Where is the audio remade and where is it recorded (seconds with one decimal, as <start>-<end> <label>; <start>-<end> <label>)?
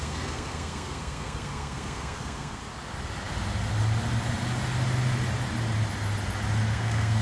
0.0-2.6 remade; 2.6-6.7 recorded; 6.7-7.2 remade